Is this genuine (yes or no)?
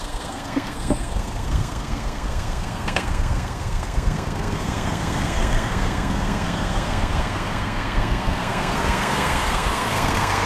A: no